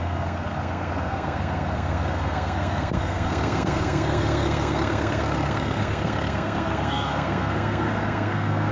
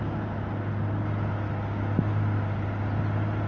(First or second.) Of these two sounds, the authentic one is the second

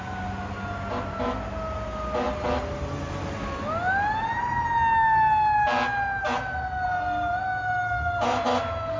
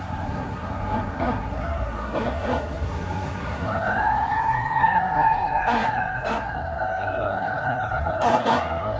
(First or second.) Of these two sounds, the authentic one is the first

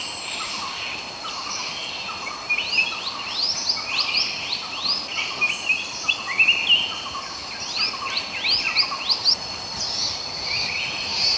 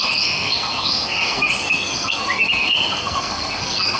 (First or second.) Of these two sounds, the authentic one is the first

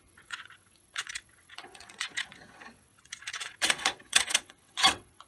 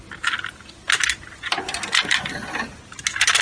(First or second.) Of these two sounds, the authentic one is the second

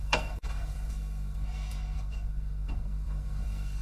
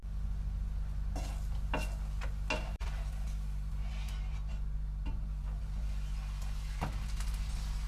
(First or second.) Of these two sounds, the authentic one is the second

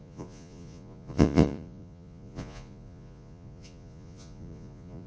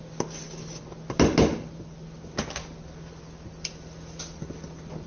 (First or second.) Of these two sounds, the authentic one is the second